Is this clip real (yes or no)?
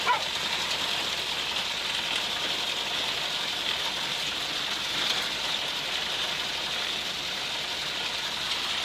no